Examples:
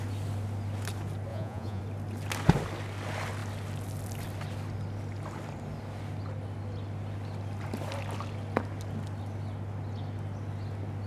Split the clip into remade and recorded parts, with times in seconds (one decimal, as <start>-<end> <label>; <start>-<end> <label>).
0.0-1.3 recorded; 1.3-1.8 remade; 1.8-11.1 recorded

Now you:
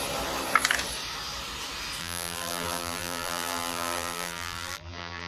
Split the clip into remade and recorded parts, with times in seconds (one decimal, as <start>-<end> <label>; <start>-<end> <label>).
0.0-2.0 recorded; 2.0-5.3 remade

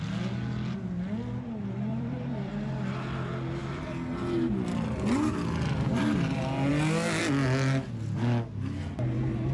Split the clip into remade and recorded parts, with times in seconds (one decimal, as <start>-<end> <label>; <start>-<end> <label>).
0.0-1.9 recorded; 1.9-2.5 remade; 2.5-9.5 recorded

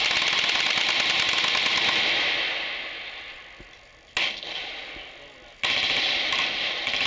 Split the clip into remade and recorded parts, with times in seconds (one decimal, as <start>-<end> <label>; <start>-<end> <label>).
0.0-7.1 recorded

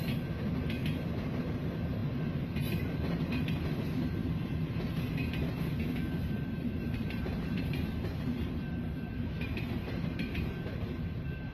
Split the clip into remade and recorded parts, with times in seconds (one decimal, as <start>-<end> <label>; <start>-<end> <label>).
0.0-4.2 recorded; 4.2-5.4 remade; 5.4-6.2 recorded; 6.2-11.0 remade; 11.0-11.5 recorded